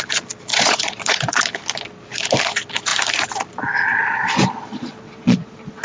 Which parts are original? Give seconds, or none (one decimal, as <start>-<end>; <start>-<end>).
0.0-0.5; 1.4-4.7